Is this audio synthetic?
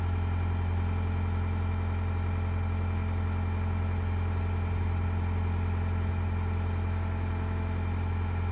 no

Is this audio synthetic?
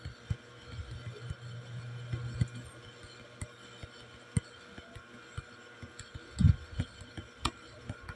no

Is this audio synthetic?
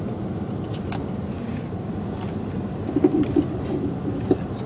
no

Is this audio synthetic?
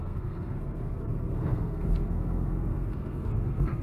yes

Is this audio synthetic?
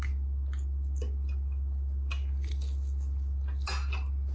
no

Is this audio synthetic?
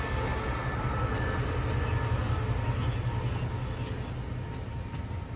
no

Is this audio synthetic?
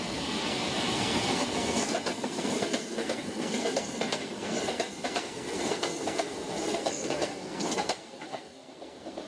yes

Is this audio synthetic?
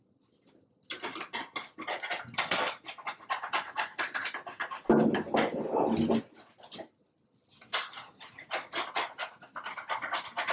no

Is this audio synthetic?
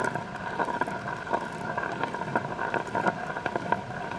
no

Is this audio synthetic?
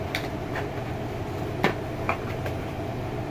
no